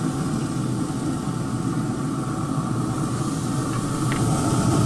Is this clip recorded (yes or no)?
yes